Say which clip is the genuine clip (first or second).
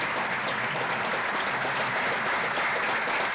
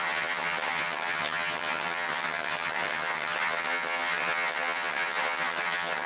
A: first